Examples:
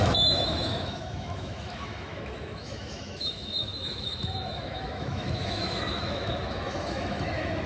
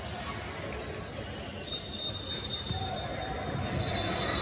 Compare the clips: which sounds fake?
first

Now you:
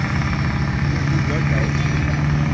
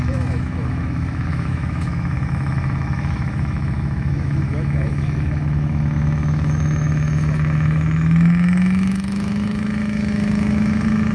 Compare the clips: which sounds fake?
second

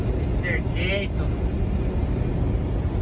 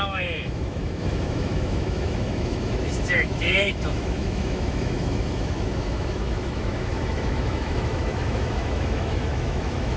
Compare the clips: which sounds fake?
second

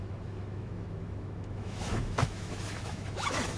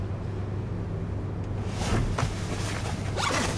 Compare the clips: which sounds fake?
first